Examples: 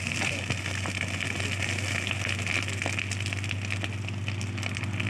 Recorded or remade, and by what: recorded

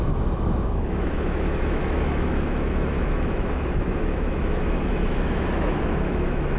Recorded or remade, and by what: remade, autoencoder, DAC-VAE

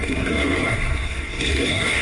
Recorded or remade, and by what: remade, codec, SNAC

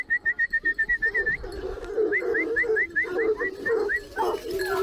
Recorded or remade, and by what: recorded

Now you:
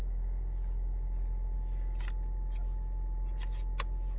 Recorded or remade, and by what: recorded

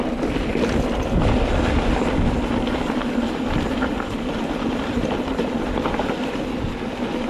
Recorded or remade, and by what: recorded